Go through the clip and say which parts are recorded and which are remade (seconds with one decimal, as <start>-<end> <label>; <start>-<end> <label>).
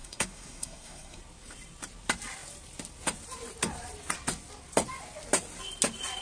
0.0-1.2 remade; 1.2-6.2 recorded